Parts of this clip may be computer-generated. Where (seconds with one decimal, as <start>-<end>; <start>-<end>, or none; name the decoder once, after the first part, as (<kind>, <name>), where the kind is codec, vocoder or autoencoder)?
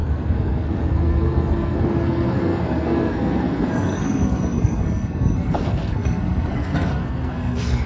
0.0-7.9 (codec, SNAC)